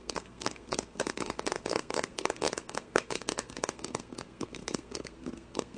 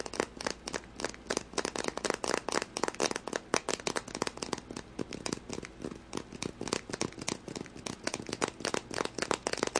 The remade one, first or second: first